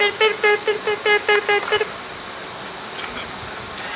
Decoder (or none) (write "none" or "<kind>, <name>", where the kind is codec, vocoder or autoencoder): none